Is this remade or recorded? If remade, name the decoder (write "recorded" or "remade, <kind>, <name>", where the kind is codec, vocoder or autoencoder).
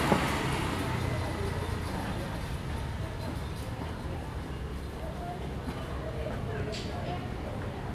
recorded